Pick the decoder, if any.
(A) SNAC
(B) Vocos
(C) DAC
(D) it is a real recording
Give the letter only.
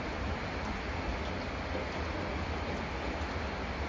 D